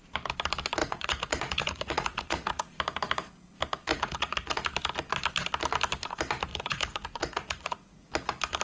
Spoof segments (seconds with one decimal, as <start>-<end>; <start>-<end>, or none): 0.8-2.8; 3.9-4.6; 6.5-8.1